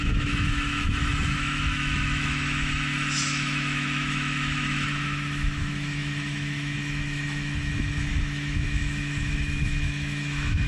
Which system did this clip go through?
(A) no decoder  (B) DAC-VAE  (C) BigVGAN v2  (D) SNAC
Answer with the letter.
B